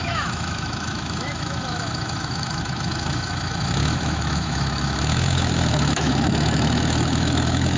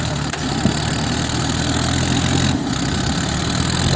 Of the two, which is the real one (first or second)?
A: second